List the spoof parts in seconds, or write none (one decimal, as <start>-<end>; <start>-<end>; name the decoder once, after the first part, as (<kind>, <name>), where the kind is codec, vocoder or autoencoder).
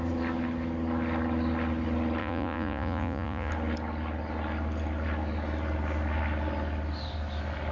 2.2-3.5 (vocoder, Vocos)